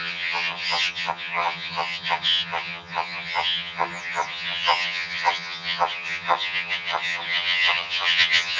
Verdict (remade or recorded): remade